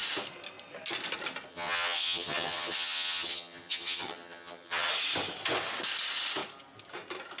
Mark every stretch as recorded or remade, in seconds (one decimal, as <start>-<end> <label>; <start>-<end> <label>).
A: 0.0-1.5 recorded; 1.5-4.9 remade; 4.9-7.4 recorded